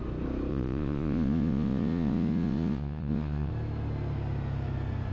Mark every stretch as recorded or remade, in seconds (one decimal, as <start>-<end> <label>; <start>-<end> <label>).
0.0-0.5 recorded; 0.5-3.5 remade; 3.5-5.1 recorded